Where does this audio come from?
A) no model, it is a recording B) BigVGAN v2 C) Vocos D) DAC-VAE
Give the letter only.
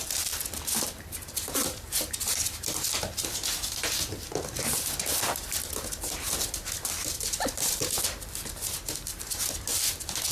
B